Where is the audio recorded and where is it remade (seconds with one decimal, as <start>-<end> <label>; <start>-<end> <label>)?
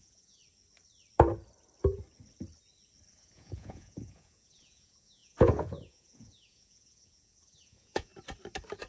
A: 0.0-0.4 remade; 0.4-3.1 recorded; 3.1-8.1 remade; 8.1-8.9 recorded